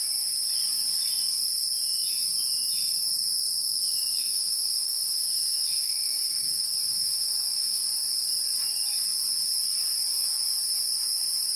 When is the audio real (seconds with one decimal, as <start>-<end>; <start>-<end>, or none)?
0.0-3.6; 7.8-11.6